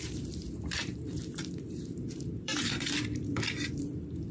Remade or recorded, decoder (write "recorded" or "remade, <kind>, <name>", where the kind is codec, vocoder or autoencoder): remade, vocoder, BigVGAN v2